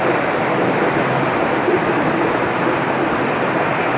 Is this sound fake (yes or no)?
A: no